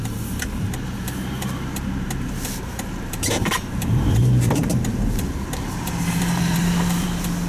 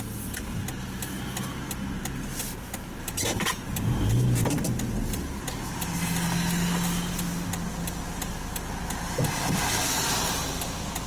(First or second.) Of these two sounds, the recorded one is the second